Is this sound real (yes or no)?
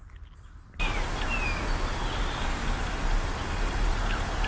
yes